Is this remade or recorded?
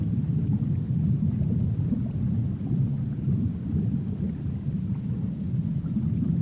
recorded